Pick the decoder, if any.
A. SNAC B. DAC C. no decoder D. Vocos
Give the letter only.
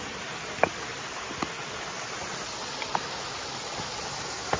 C